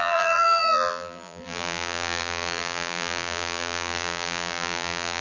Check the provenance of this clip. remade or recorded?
remade